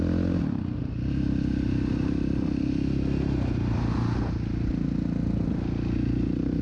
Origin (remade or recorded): recorded